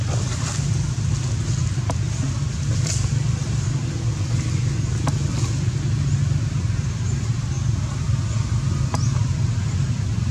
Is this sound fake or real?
real